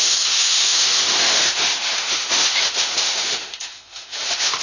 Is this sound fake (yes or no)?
yes